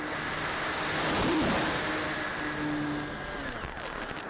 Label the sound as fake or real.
real